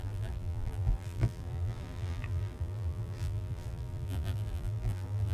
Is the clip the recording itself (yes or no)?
no